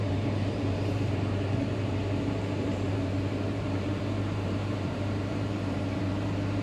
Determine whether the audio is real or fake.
fake